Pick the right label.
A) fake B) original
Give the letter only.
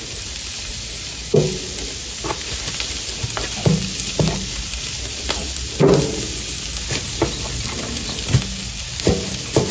B